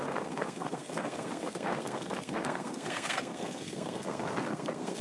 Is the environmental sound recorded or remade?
remade